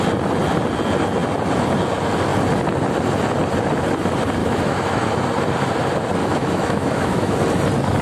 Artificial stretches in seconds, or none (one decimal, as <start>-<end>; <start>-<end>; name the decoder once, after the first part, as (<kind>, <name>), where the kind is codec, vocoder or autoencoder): 4.4-5.1 (autoencoder, DAC-VAE); 6.2-7.4